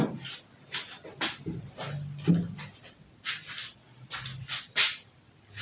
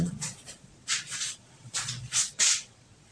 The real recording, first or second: first